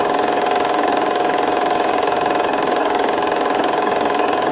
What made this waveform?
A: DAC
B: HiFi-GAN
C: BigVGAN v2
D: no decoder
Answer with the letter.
A